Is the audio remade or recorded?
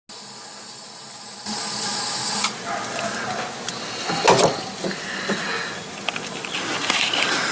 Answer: recorded